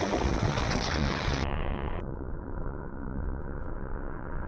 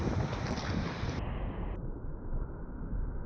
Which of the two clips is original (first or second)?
second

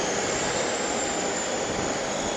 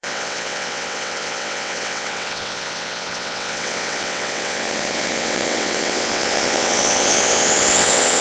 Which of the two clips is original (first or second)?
first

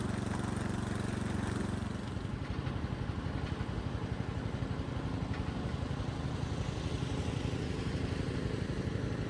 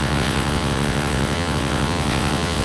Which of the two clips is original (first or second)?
first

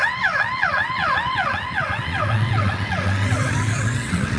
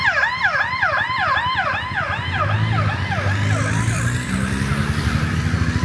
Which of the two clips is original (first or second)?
second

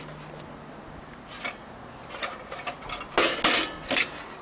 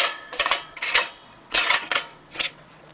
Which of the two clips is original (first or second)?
first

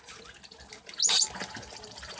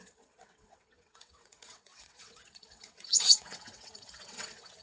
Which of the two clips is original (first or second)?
first